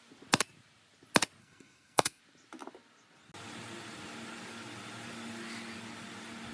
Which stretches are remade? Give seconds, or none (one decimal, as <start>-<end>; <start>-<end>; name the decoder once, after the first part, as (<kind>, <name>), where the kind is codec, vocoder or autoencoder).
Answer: 1.4-2.2 (codec, SNAC)